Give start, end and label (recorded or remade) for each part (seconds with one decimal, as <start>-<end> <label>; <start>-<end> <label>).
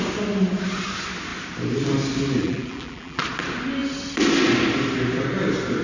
0.0-2.4 recorded; 2.4-3.2 remade; 3.2-5.8 recorded